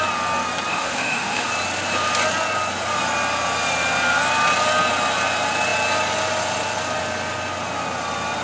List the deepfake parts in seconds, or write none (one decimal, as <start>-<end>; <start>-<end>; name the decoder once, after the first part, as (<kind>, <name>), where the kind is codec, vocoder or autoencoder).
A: 0.7-1.5 (autoencoder, DAC-VAE)